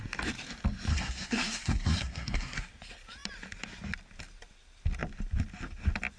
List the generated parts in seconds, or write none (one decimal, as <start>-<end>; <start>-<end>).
0.9-2.7